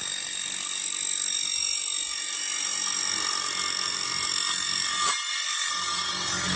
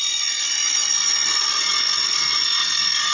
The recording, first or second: first